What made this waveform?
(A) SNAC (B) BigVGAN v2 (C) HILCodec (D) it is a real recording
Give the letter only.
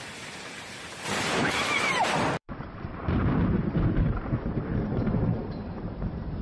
B